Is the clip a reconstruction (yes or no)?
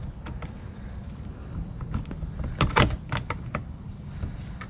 no